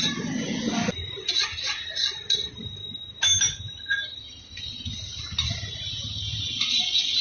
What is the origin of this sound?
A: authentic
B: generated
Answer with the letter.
A